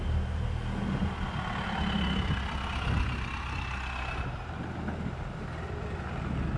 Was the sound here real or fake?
real